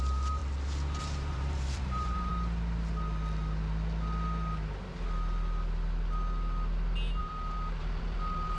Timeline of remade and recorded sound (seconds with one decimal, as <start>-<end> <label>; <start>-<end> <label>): 0.0-0.4 remade; 0.4-1.0 recorded; 1.0-2.3 remade; 2.3-7.2 recorded; 7.2-8.6 remade